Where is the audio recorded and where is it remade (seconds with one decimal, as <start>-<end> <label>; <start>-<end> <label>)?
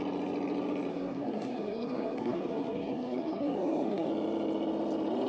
0.0-0.9 recorded; 0.9-4.1 remade; 4.1-5.3 recorded